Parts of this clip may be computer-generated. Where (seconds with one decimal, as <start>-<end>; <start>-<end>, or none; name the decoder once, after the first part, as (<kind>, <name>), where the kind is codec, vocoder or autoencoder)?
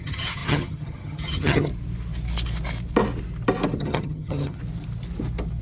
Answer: 0.0-1.7 (vocoder, HiFi-GAN); 3.8-4.6